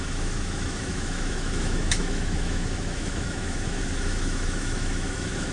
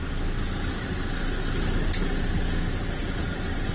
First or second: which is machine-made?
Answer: first